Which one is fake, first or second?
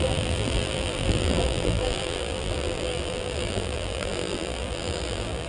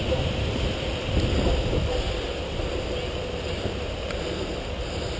first